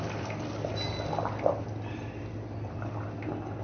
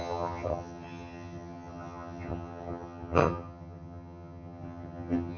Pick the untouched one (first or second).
first